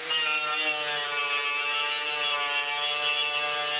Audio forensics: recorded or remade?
recorded